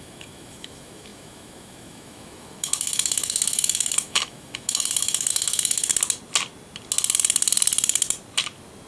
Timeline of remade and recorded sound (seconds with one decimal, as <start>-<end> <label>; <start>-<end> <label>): 0.0-5.9 remade; 5.9-8.9 recorded